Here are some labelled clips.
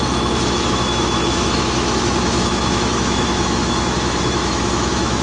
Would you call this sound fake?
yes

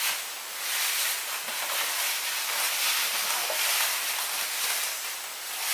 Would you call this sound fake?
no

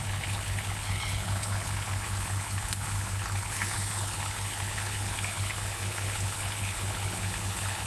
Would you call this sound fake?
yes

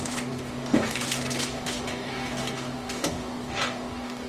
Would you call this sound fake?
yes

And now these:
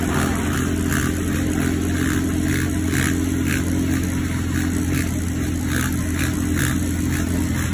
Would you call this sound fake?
no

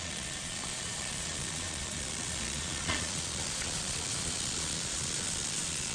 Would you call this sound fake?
yes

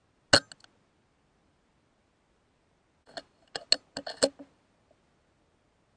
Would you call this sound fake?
no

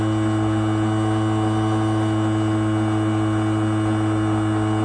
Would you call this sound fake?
no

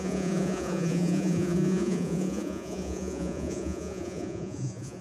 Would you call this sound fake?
yes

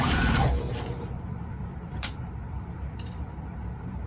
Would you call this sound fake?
yes